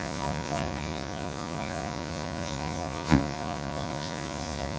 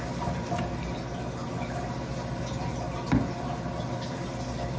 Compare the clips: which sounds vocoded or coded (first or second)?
first